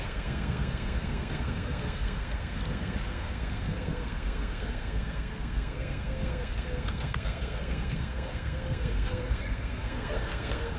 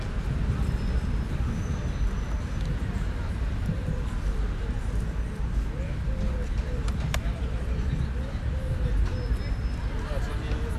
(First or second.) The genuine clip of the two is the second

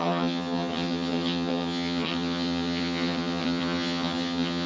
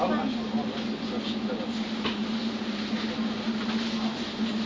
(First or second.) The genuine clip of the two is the second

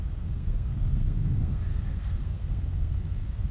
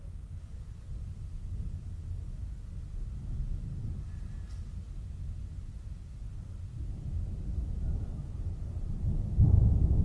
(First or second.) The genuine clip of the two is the second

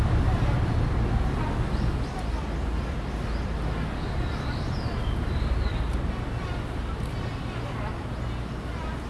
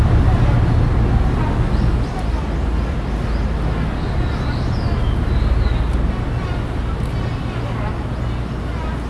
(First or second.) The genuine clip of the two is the second